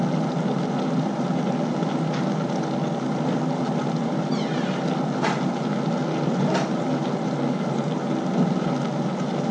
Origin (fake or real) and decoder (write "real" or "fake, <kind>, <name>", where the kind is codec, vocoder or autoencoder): real